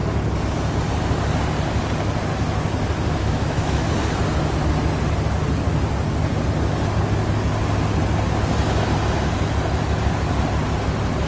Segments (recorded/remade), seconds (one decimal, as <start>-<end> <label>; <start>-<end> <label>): 0.0-3.2 recorded; 3.2-3.9 remade; 3.9-11.3 recorded

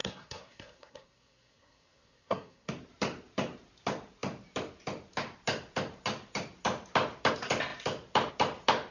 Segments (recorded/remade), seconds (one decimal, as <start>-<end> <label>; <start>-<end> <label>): 0.0-2.7 remade; 2.7-8.9 recorded

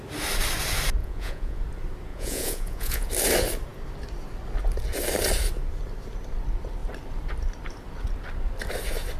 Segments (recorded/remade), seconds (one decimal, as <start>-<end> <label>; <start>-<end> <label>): 0.0-1.0 recorded; 1.0-1.6 remade; 1.6-2.1 recorded; 2.1-3.1 remade; 3.1-9.2 recorded

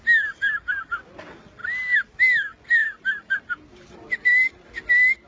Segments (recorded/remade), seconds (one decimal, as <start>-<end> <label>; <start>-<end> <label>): 0.0-2.8 recorded; 2.8-4.7 remade; 4.7-5.3 recorded

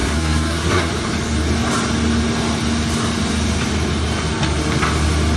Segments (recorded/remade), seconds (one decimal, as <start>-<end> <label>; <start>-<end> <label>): 0.0-0.9 remade; 0.9-5.4 recorded

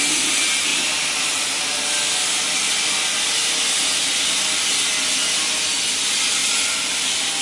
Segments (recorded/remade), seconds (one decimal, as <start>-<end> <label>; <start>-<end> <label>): 0.0-7.4 recorded